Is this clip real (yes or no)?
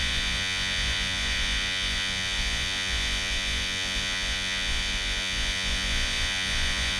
no